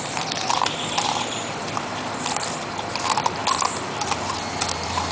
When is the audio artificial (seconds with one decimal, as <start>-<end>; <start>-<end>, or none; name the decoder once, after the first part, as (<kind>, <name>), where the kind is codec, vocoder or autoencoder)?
0.0-3.4 (vocoder, BigVGAN v2); 4.2-5.1